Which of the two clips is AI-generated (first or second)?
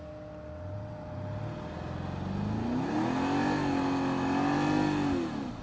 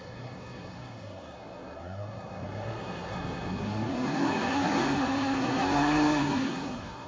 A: second